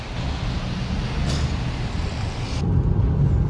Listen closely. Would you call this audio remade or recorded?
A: recorded